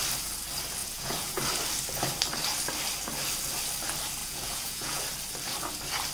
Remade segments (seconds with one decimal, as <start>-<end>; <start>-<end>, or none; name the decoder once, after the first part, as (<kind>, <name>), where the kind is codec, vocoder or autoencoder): 0.8-1.4 (vocoder, Vocos); 4.2-5.0